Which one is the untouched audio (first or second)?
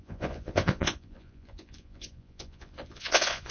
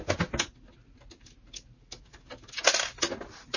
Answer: second